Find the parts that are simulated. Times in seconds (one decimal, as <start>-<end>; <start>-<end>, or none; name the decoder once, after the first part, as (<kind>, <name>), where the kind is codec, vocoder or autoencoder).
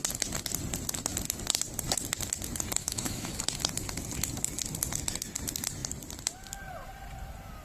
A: 2.8-3.4 (autoencoder, DAC-VAE)